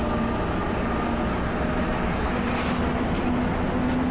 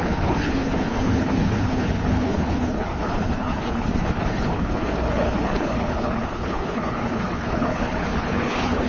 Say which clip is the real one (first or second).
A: first